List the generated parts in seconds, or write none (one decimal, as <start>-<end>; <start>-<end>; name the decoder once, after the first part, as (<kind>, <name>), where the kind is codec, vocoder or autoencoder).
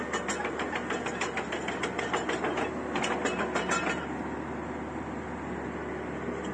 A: none